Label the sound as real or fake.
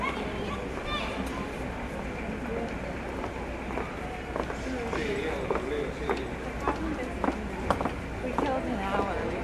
real